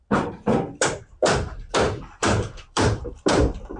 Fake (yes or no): yes